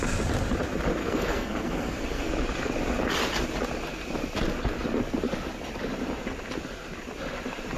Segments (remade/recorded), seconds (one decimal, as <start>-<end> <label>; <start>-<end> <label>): 0.0-1.0 recorded; 1.0-2.3 remade; 2.3-7.8 recorded